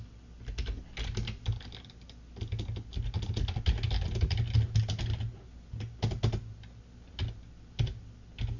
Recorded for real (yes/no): yes